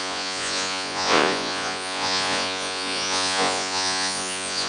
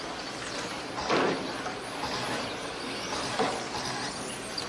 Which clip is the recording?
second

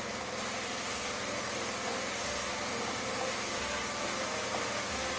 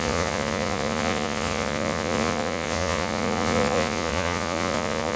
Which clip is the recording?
first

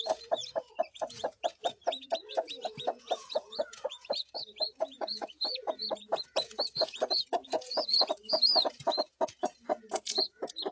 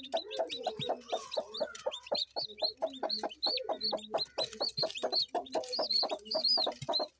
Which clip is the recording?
second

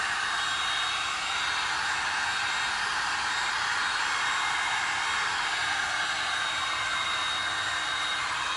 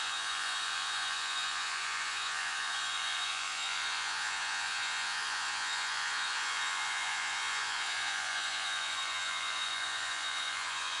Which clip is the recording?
first